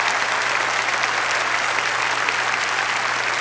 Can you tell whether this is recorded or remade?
recorded